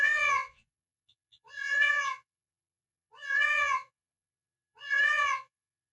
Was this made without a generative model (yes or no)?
no